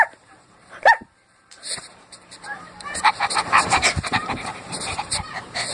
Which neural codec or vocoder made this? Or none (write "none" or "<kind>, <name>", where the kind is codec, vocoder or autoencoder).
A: vocoder, BigVGAN v2